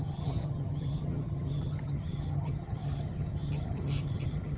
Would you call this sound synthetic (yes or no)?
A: yes